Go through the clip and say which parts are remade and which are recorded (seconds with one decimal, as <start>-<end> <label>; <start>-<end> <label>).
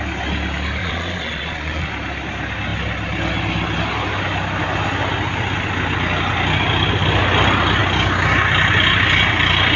0.0-0.8 recorded; 0.8-1.9 remade; 1.9-9.8 recorded